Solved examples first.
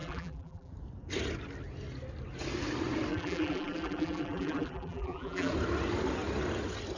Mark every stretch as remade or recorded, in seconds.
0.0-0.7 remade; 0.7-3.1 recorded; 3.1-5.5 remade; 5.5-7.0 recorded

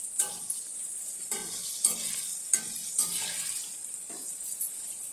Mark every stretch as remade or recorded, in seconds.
0.0-1.4 remade; 1.4-4.3 recorded; 4.3-5.1 remade

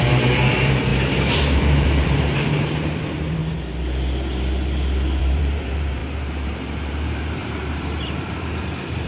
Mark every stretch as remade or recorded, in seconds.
0.0-3.4 remade; 3.4-5.2 recorded; 5.2-9.1 remade